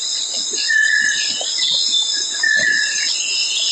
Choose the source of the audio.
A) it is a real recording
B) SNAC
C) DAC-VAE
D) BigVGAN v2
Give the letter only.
A